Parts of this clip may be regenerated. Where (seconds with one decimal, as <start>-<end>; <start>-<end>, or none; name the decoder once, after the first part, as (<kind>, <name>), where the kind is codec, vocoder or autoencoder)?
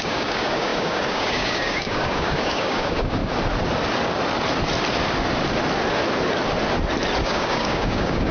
0.0-3.2 (codec, DAC); 7.2-8.3